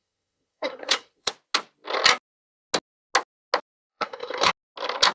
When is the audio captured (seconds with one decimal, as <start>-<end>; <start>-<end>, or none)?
1.3-3.9; 4.5-5.1